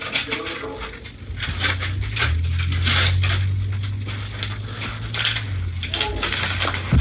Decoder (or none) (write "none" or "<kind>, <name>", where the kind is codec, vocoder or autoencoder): none